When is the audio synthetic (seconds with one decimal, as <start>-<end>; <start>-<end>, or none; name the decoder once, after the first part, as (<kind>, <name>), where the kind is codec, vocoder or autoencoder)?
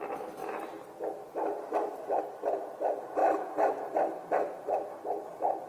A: 0.4-2.2 (vocoder, BigVGAN v2)